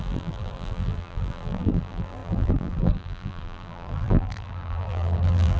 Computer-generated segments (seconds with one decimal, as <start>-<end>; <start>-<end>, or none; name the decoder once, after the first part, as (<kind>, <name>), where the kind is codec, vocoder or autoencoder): 0.0-5.6 (vocoder, BigVGAN v2)